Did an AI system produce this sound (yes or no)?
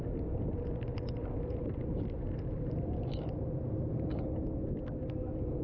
no